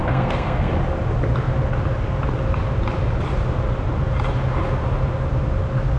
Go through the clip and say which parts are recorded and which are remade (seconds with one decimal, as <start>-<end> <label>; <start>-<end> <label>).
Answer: 0.0-0.7 remade; 0.7-6.0 recorded